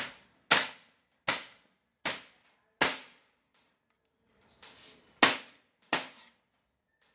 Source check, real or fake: real